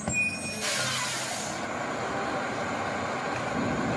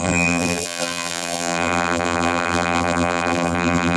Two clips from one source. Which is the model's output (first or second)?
second